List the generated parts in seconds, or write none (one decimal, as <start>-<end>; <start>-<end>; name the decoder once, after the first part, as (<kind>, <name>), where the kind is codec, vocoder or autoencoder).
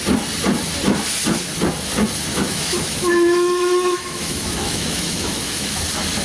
2.3-5.8 (autoencoder, DAC-VAE)